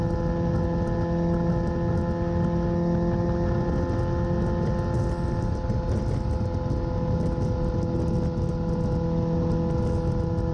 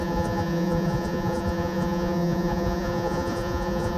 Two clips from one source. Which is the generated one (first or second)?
second